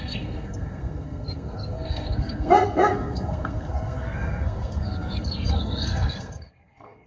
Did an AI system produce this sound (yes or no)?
yes